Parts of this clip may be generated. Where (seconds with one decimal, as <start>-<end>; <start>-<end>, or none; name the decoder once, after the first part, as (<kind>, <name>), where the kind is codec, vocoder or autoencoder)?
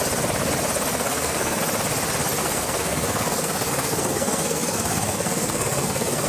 0.9-1.6 (codec, SNAC); 2.4-6.3